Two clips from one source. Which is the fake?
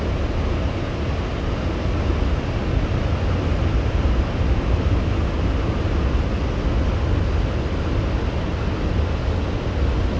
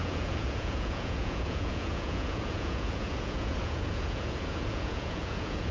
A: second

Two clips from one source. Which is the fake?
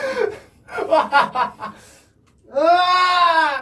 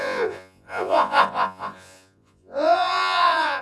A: second